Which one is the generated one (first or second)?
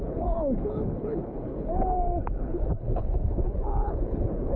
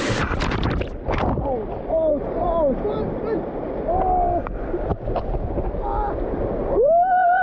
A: first